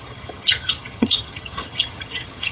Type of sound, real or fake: fake